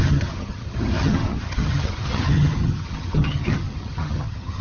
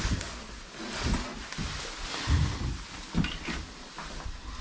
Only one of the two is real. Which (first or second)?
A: second